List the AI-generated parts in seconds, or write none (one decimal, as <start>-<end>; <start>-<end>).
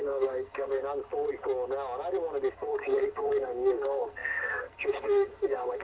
0.0-0.8; 2.5-5.8